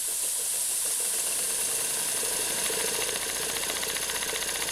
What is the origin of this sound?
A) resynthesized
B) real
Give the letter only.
B